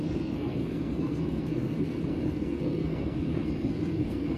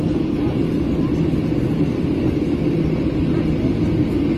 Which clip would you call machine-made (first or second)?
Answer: first